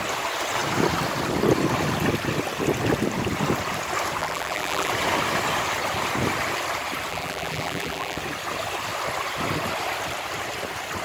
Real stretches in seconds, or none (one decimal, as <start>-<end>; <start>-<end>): 0.0-4.2; 4.9-7.1; 8.2-11.0